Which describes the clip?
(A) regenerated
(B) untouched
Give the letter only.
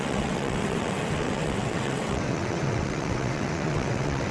A